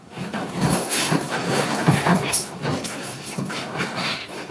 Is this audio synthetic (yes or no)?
yes